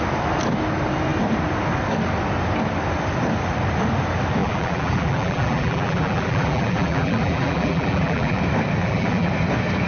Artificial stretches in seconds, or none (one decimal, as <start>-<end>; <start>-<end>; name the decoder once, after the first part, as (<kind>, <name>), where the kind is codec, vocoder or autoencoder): 4.4-8.4 (vocoder, BigVGAN v2); 8.8-9.3